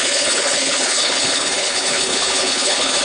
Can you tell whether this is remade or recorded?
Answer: remade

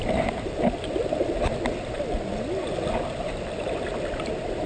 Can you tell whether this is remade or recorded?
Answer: recorded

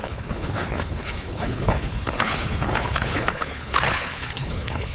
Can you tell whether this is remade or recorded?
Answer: remade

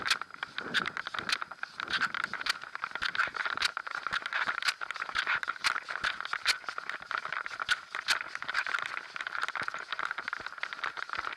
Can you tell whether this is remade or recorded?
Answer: recorded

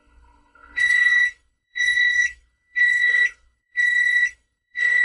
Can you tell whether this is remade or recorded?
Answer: remade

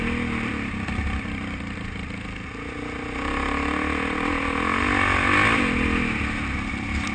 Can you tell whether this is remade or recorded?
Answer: recorded